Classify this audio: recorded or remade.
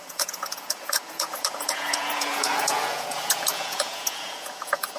remade